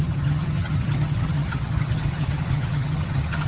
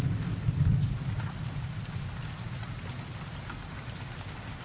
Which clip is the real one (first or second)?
second